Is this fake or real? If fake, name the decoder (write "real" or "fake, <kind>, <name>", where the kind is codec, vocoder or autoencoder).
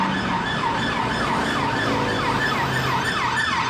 real